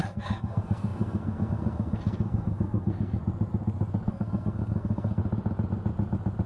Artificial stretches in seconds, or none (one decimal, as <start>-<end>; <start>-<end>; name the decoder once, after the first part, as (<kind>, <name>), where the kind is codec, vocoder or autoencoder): 0.0-3.2 (codec, SNAC); 4.1-5.2